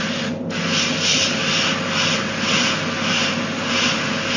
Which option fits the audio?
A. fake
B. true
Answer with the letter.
B